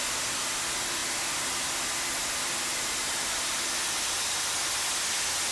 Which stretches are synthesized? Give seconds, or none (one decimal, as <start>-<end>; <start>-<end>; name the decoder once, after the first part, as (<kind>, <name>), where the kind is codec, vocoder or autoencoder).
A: none